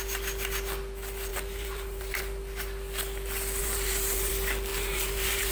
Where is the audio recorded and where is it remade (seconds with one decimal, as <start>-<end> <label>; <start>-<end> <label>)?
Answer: 0.0-1.3 recorded; 1.3-2.2 remade; 2.2-3.6 recorded; 3.6-4.3 remade; 4.3-4.7 recorded; 4.7-5.5 remade